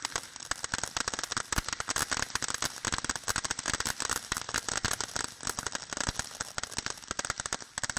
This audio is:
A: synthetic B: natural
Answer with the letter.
B